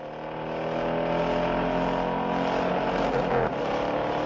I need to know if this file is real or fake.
real